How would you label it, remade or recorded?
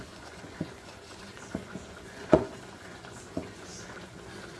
remade